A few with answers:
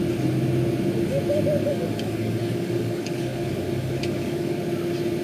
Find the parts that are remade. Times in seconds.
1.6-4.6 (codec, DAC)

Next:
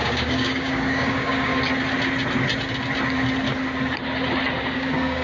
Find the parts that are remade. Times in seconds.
0.0-1.5 (codec, DAC); 4.6-5.2

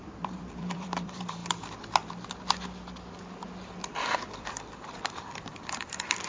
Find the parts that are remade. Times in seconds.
0.0-1.4 (vocoder, BigVGAN v2); 4.2-6.3

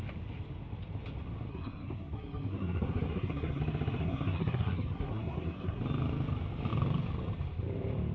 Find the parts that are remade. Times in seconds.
1.5-3.6 (codec, SNAC); 4.0-5.8

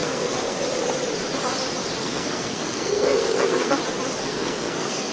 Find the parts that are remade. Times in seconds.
0.0-0.6 (codec, SNAC); 2.0-3.8; 4.2-5.1

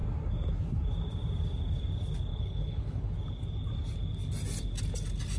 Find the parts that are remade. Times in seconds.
2.3-3.1 (codec, HILCodec)